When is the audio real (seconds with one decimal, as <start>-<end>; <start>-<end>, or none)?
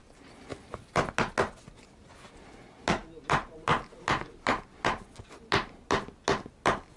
0.0-7.0